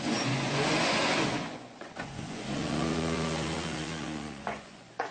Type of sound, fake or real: fake